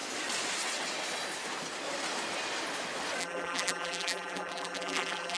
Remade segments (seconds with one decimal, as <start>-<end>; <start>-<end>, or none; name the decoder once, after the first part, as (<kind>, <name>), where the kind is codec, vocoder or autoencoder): 3.2-5.4 (vocoder, BigVGAN v2)